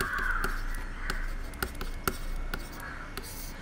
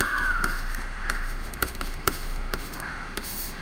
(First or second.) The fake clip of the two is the second